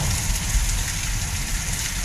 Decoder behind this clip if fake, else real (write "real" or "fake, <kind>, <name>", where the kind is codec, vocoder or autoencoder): real